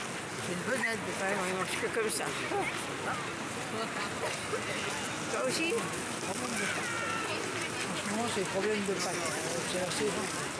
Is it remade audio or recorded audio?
recorded